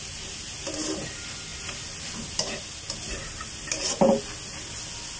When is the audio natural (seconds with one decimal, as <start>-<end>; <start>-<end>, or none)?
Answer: 0.0-5.2